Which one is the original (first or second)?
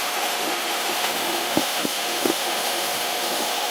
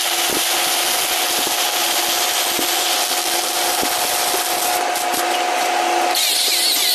second